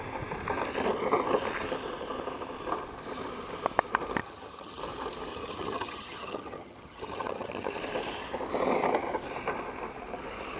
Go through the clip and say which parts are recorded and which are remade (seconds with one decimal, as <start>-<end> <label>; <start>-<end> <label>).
0.0-4.2 recorded; 4.2-4.8 remade; 4.8-5.3 recorded; 5.3-7.8 remade; 7.8-10.6 recorded